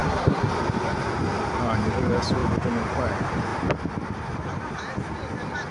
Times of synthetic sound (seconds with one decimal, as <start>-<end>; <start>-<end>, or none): 0.0-0.5